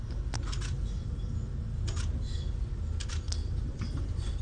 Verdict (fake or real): real